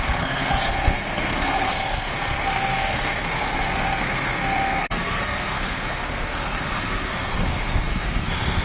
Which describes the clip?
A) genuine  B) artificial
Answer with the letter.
B